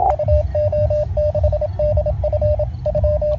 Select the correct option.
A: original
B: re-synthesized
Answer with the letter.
A